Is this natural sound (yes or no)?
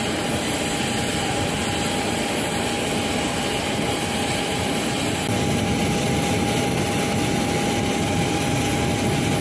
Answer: yes